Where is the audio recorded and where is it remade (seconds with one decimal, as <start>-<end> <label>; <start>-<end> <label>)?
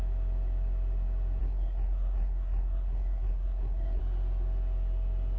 0.0-1.4 recorded; 1.4-4.0 remade; 4.0-5.4 recorded